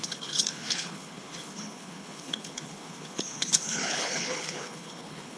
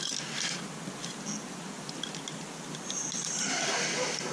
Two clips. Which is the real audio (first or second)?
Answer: second